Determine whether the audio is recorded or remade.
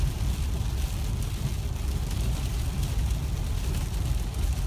recorded